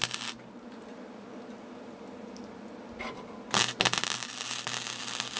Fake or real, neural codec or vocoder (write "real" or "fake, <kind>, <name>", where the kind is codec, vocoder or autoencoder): real